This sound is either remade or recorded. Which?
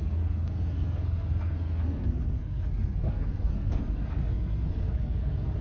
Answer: remade